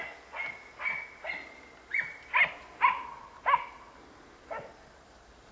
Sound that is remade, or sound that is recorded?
recorded